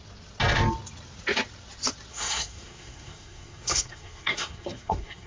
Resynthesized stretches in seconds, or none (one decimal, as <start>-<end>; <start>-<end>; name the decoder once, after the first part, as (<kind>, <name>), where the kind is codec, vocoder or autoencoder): 2.1-5.3 (codec, SNAC)